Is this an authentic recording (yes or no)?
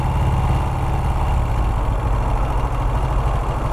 yes